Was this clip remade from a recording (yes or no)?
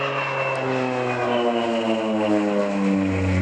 no